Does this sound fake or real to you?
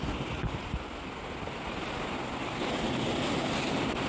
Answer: real